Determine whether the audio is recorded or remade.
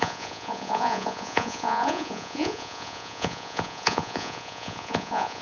remade